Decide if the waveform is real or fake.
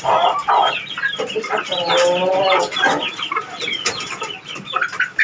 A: real